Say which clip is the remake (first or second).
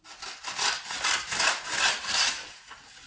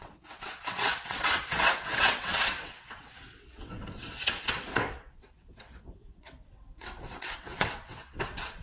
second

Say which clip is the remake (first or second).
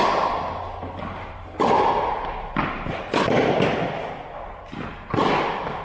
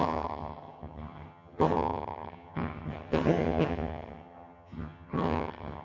second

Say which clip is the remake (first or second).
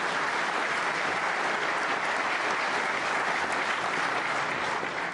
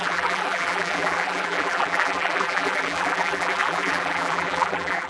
second